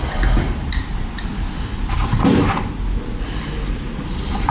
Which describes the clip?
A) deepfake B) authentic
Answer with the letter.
B